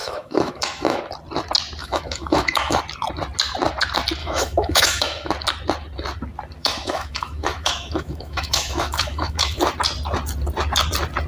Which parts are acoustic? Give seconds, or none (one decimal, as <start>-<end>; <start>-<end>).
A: 1.0-1.8; 2.8-4.2; 5.3-6.6; 9.6-11.3